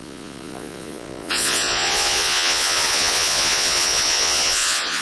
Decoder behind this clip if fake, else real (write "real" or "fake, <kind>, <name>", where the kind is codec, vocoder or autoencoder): fake, vocoder, Vocos